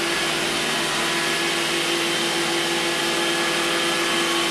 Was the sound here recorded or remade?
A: recorded